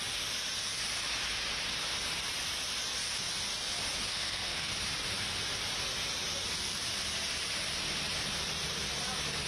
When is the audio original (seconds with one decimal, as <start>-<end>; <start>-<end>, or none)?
0.0-4.1; 4.7-9.5